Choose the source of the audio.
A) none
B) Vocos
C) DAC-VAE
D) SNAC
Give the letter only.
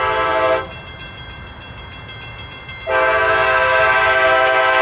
A